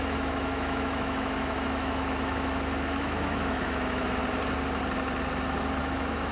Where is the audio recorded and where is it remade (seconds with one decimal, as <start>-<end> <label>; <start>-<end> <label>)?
0.0-4.2 remade; 4.2-5.8 recorded; 5.8-6.3 remade